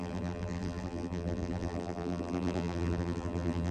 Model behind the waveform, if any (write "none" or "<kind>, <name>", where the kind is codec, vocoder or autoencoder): vocoder, BigVGAN v2